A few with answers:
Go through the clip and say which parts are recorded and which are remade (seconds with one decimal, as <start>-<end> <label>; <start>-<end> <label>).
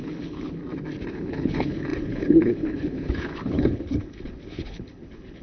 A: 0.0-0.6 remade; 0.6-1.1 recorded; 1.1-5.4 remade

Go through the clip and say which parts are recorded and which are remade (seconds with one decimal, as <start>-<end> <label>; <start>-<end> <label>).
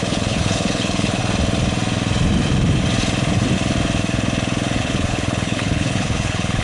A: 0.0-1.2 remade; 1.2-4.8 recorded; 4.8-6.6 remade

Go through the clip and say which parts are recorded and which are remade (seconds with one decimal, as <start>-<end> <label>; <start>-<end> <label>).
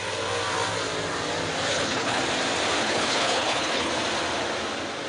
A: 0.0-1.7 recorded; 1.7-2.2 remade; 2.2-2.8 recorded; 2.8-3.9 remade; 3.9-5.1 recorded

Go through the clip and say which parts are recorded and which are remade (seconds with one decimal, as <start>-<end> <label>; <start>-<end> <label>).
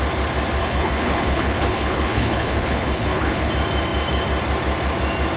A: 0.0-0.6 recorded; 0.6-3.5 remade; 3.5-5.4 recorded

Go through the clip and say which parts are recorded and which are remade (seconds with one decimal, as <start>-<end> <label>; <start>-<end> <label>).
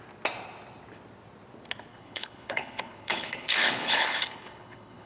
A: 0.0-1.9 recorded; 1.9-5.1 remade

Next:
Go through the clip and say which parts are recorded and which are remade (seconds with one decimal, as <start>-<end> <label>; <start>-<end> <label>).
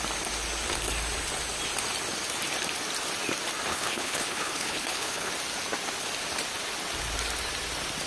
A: 0.0-3.7 recorded; 3.7-5.3 remade; 5.3-8.1 recorded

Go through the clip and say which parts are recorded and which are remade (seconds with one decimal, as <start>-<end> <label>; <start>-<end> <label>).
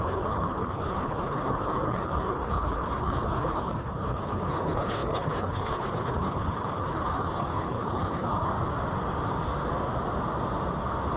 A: 0.0-8.5 remade; 8.5-11.2 recorded